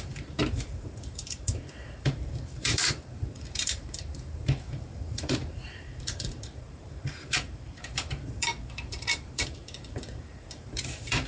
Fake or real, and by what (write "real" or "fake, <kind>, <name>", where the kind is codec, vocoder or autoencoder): fake, vocoder, BigVGAN v2